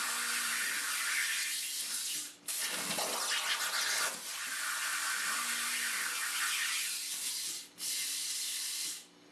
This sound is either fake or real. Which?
real